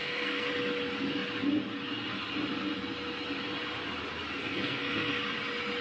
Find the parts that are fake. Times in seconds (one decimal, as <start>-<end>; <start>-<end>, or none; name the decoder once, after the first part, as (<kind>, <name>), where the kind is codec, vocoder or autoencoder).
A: 0.0-0.5 (codec, SNAC); 4.4-5.1

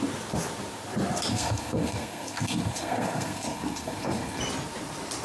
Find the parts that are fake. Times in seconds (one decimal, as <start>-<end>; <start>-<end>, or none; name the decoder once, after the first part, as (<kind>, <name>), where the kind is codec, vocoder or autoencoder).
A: 1.3-4.4 (codec, SNAC)